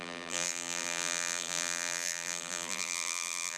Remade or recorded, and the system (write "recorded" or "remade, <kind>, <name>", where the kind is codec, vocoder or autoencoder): remade, vocoder, BigVGAN v2